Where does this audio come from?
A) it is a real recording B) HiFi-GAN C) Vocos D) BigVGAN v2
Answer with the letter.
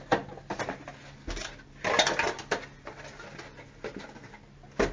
A